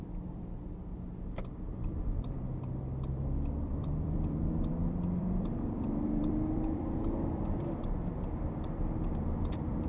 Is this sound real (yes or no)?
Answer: no